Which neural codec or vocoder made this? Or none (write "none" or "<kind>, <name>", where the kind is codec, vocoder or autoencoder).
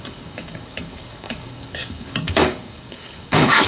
codec, DAC